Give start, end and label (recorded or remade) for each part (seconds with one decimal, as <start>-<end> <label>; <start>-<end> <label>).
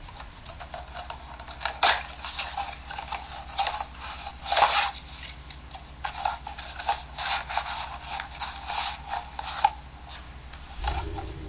0.0-0.6 remade; 0.6-11.5 recorded